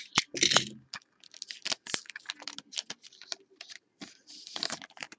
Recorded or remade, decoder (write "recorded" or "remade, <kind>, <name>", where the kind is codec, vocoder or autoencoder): recorded